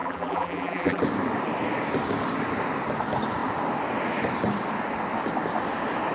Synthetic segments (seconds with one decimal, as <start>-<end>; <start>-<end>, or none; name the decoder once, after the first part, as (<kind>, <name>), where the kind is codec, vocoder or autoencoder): 0.0-1.0 (vocoder, BigVGAN v2)

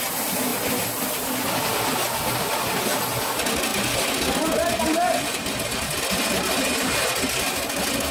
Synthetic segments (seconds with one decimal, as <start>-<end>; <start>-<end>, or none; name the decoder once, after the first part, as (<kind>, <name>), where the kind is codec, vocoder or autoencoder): none

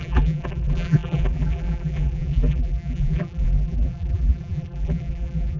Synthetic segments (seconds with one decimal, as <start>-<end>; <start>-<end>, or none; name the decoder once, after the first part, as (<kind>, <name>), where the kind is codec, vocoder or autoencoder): 0.0-5.6 (vocoder, BigVGAN v2)

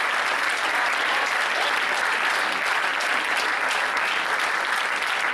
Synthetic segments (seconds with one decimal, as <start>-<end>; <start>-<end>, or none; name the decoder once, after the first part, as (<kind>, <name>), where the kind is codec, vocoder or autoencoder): none

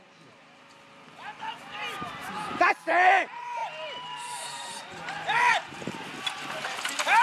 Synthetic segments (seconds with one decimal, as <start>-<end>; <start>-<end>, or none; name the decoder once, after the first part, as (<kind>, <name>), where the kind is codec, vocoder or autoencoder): 2.2-2.7 (vocoder, BigVGAN v2); 3.6-5.8

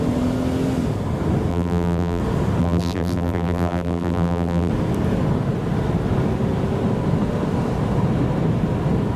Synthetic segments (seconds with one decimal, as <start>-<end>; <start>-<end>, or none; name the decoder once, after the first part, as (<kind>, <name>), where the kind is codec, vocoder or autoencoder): 1.5-2.2 (vocoder, BigVGAN v2); 2.6-4.7

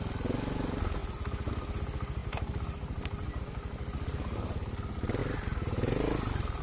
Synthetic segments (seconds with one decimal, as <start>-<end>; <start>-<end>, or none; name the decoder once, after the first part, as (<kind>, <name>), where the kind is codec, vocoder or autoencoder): 2.2-3.4 (vocoder, BigVGAN v2); 5.2-6.6

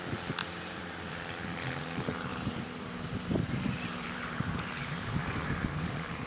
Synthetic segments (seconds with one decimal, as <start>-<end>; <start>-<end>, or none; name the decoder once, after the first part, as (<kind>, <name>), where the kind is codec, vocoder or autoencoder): 0.4-1.0 (vocoder, BigVGAN v2); 2.3-6.3